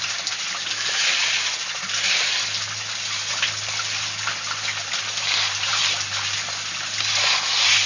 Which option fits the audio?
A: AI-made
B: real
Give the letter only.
B